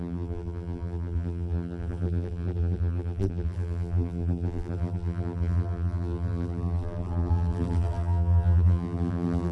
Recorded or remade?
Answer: remade